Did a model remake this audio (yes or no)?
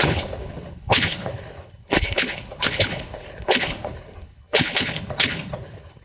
yes